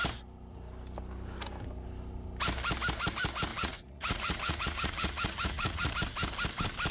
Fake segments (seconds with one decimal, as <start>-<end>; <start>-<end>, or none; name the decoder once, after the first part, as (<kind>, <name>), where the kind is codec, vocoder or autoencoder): 3.5-5.9 (vocoder, Vocos)